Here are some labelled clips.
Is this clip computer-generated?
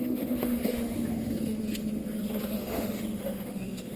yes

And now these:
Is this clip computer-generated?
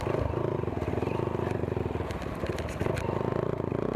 no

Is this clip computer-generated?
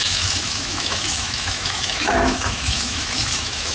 yes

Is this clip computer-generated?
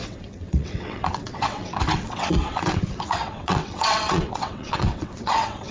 yes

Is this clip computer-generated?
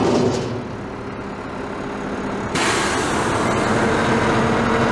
no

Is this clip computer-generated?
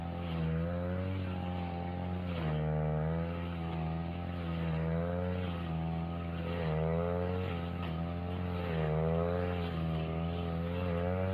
no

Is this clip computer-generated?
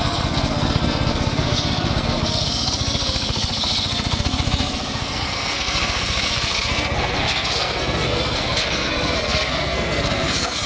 yes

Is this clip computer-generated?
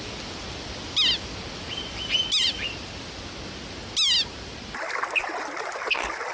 no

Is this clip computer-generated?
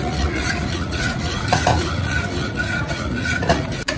yes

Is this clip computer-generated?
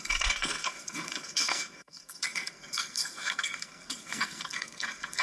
yes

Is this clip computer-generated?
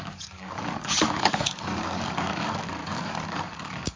yes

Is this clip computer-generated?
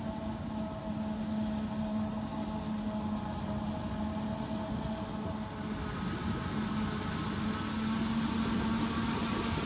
no